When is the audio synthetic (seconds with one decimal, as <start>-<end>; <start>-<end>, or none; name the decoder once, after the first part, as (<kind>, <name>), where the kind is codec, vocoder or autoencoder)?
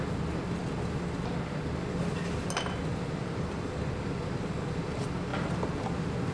3.2-3.7 (vocoder, BigVGAN v2)